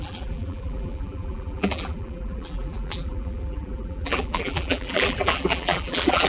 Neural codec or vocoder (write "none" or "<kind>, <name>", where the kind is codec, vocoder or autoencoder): vocoder, BigVGAN v2